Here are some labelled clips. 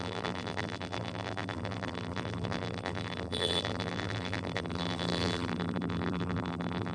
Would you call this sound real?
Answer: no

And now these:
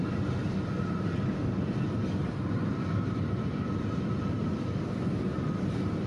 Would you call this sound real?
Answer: no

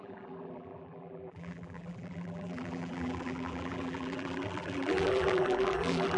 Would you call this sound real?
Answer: no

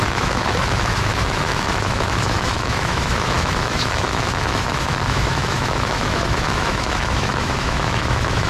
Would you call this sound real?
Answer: no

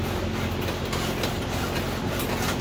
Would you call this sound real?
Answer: yes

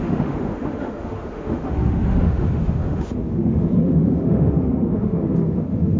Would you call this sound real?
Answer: no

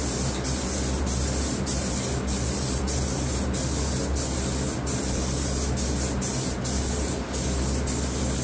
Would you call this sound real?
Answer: yes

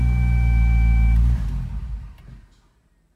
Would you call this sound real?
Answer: yes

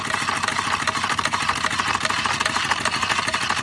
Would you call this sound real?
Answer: yes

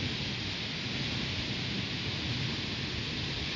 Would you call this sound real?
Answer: yes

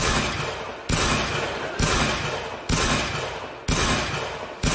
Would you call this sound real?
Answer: yes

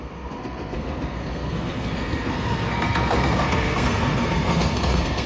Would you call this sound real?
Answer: no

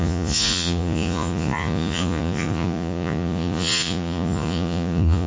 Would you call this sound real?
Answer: no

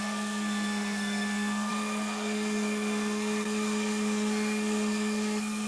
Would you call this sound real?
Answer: no